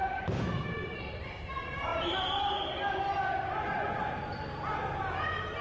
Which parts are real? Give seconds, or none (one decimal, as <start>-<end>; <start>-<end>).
1.0-1.9; 3.0-5.6